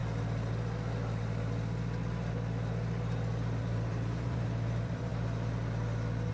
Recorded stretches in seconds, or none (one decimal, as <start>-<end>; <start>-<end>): 0.0-3.6; 5.1-6.3